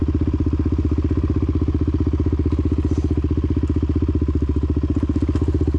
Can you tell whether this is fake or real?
real